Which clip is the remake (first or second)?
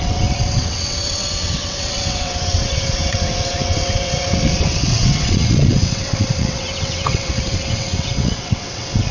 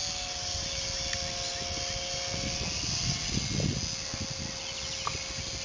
first